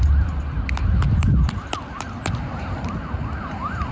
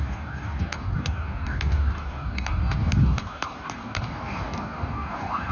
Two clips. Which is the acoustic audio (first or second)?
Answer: first